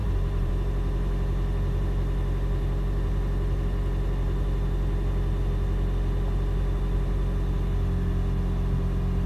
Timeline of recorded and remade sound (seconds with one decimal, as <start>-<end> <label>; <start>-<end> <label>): 0.0-0.5 remade; 0.5-9.3 recorded